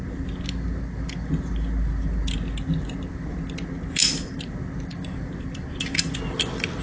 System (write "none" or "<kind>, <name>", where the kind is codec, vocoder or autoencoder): none